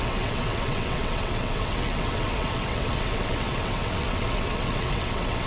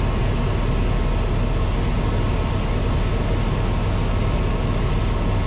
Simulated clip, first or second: first